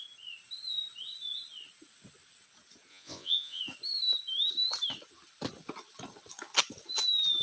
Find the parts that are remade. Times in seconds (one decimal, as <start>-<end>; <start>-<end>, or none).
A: 2.9-3.6